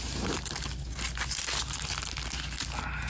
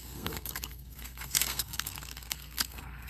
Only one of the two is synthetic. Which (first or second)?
second